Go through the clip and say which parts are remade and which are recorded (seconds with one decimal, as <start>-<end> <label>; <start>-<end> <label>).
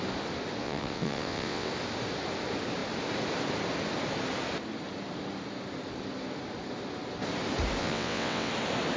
0.0-0.6 recorded; 0.6-1.7 remade; 1.7-7.8 recorded; 7.8-8.5 remade; 8.5-9.0 recorded